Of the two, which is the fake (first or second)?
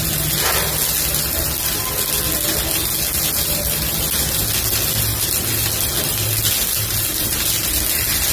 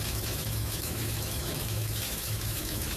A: second